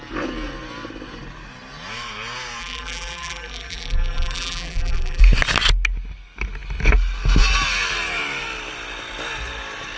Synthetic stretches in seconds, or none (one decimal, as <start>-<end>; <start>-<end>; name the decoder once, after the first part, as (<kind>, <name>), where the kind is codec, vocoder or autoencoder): 2.6-5.2 (vocoder, BigVGAN v2)